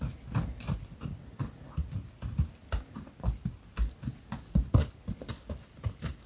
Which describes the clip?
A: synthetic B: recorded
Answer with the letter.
B